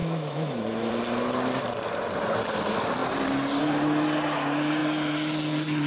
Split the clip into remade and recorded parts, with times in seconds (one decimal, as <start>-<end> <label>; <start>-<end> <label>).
0.0-0.9 remade; 0.9-5.9 recorded